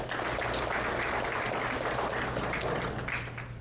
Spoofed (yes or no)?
no